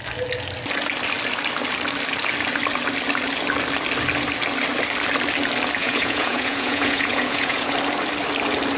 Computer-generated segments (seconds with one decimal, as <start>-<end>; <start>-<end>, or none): 5.8-7.7